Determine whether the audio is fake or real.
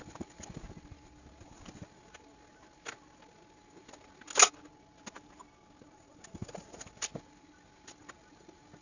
real